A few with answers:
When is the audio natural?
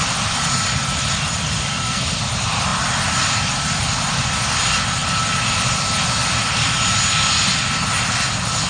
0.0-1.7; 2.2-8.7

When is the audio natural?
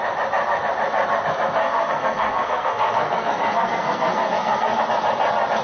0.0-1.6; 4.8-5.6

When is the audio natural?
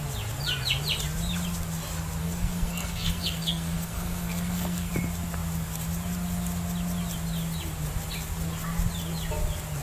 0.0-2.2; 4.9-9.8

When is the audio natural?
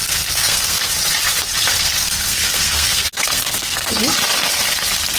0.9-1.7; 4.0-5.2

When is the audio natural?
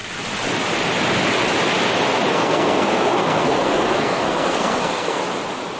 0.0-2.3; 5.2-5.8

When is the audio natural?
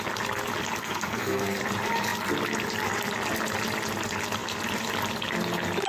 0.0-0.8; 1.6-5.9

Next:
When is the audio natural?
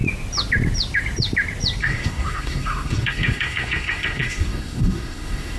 0.0-1.8